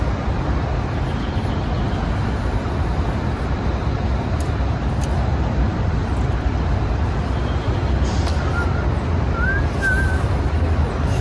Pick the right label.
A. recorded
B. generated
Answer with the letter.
A